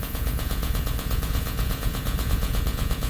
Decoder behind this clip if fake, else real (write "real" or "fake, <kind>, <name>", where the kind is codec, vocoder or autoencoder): fake, vocoder, Vocos